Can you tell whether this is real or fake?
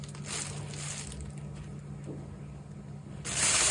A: real